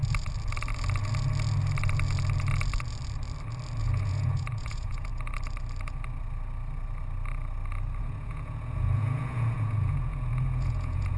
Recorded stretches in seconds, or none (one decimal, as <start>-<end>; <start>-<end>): 0.0-3.8; 5.1-8.0